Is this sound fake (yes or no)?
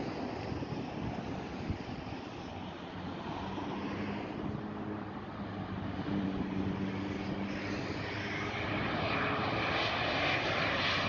no